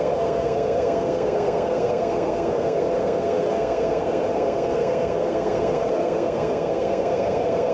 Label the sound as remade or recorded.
remade